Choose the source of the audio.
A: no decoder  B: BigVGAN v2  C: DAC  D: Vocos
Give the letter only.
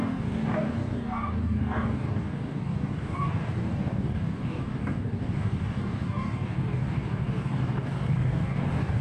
C